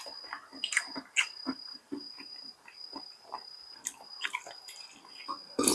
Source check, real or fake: real